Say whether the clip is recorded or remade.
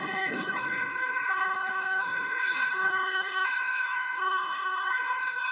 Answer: remade